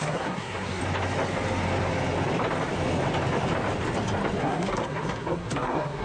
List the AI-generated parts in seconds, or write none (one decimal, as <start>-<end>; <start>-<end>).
0.0-0.8; 4.4-6.0